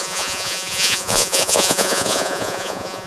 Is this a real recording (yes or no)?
no